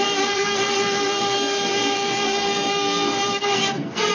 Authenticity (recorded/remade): remade